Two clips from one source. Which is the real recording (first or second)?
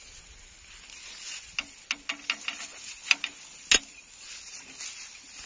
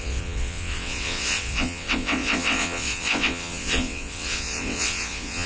first